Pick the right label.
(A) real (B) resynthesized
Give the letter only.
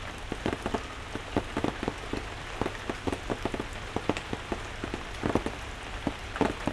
A